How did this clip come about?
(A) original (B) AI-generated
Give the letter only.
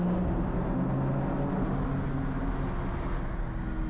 A